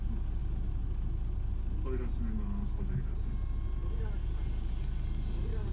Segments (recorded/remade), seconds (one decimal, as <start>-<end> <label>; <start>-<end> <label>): 0.0-5.7 recorded